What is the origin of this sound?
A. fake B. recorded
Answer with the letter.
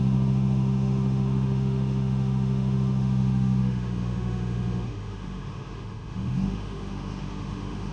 A